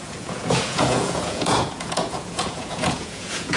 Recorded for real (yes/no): no